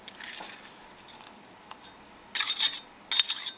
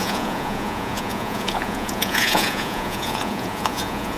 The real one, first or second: first